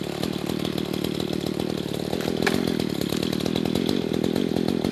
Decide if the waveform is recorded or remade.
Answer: recorded